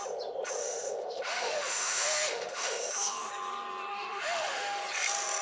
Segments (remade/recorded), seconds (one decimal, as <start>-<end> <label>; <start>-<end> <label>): 0.0-0.6 recorded; 0.6-3.3 remade; 3.3-3.9 recorded; 3.9-4.8 remade; 4.8-5.4 recorded